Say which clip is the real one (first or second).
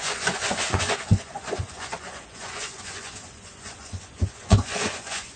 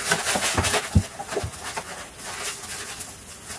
second